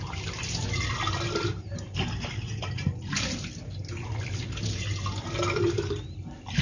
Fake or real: real